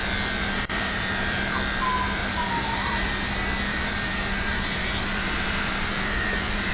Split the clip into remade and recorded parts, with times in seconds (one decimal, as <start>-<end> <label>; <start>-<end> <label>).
0.0-0.4 recorded; 0.4-1.4 remade; 1.4-2.2 recorded; 2.2-3.1 remade; 3.1-3.7 recorded; 3.7-6.7 remade